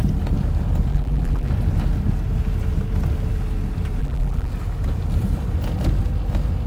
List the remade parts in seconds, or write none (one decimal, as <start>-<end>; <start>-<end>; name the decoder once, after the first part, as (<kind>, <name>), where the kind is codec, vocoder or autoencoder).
0.9-1.5 (vocoder, BigVGAN v2); 4.0-4.5